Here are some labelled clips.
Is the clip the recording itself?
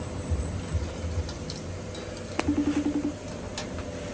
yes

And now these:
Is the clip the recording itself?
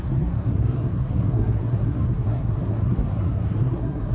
no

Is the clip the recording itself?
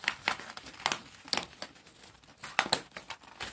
yes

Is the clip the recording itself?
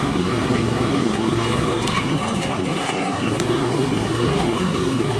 no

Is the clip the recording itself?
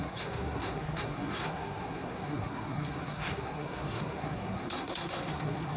no